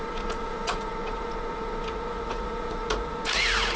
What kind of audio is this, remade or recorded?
remade